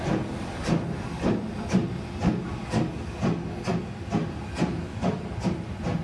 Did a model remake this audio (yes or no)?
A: no